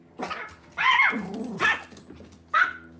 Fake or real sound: real